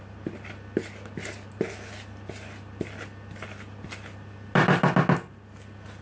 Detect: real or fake real